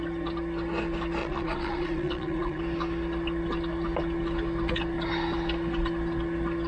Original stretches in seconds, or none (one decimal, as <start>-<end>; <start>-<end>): 0.0-1.2; 2.6-6.7